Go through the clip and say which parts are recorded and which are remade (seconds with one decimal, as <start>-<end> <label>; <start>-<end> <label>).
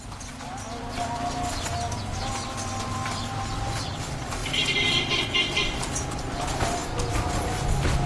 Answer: 0.0-2.9 recorded; 2.9-6.8 remade; 6.8-8.1 recorded